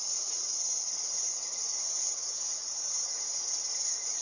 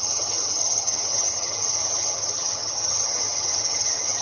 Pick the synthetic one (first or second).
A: second